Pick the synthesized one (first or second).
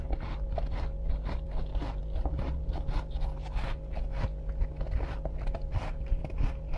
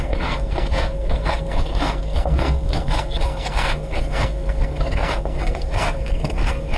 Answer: second